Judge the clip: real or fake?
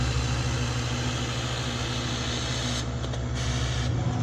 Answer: real